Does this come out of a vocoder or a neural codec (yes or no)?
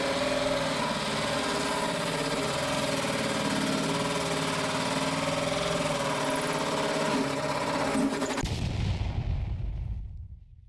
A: no